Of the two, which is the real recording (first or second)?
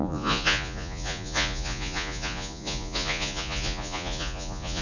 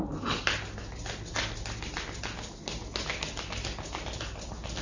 second